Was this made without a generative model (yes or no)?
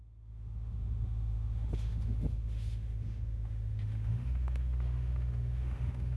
no